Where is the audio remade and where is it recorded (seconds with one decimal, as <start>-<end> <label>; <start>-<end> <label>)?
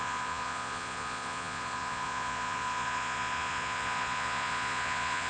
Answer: 0.0-5.3 remade